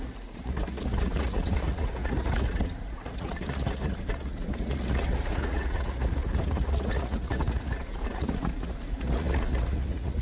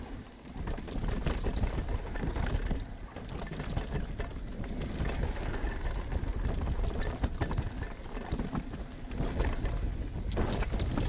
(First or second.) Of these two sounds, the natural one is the second